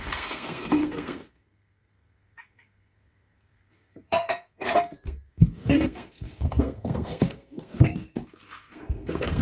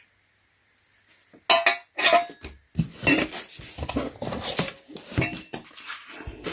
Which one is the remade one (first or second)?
first